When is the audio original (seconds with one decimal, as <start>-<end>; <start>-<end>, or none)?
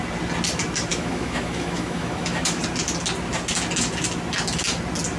0.0-0.9; 2.6-5.2